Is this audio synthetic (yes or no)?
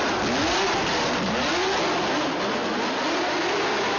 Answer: no